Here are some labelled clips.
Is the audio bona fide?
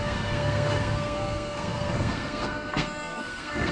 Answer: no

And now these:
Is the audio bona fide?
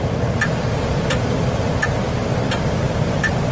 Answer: yes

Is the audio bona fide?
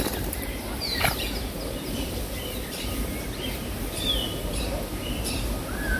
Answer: yes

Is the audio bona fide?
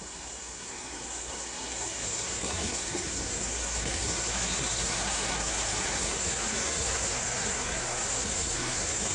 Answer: no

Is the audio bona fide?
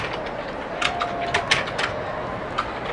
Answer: yes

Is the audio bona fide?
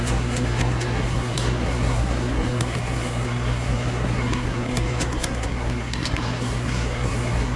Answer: no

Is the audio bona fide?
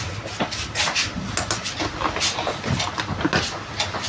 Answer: yes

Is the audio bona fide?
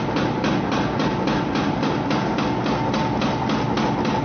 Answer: yes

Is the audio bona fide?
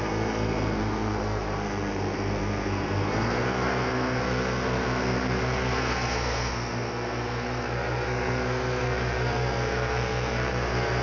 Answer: no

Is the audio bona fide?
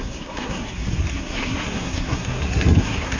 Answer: no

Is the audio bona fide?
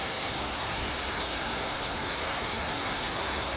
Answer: no